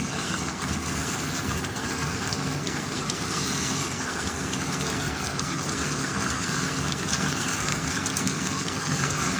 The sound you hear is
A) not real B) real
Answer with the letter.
A